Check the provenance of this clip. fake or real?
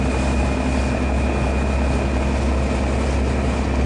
real